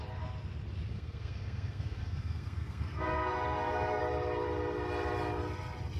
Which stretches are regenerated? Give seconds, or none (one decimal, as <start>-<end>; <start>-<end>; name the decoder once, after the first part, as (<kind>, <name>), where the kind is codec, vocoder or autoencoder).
0.9-4.0 (codec, SNAC)